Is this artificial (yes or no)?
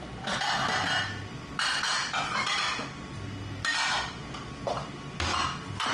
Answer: no